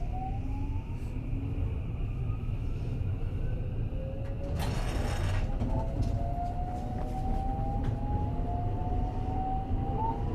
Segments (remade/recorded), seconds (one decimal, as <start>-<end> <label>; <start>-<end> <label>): 0.0-2.4 recorded; 2.4-3.6 remade; 3.6-10.3 recorded